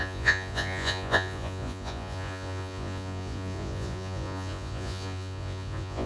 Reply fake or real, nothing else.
fake